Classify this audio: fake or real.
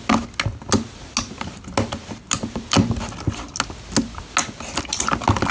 real